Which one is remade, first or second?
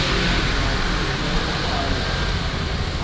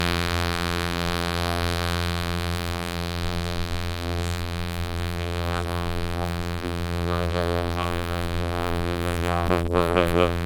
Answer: second